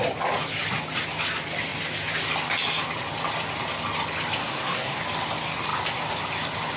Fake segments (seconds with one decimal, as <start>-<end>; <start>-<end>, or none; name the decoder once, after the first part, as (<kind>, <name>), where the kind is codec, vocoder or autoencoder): 4.4-5.0 (codec, SNAC)